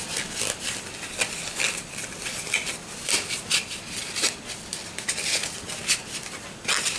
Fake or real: real